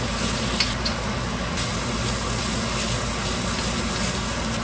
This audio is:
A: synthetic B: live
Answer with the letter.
B